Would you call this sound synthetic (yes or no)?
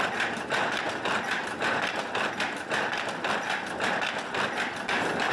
no